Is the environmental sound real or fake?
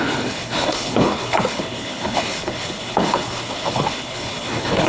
fake